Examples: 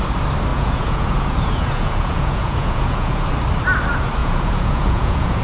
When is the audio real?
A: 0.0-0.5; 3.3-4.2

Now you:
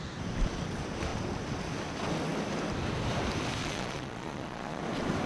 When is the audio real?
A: 0.0-3.6; 4.8-5.3

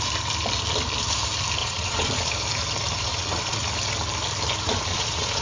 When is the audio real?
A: 0.0-1.6; 2.3-3.1; 3.7-4.9

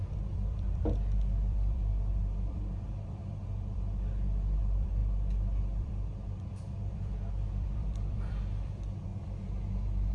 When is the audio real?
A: 9.1-10.1

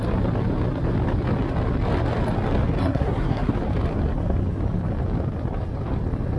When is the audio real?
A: 0.0-2.8; 3.5-6.4